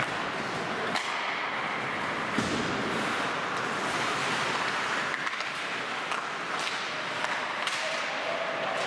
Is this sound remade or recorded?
recorded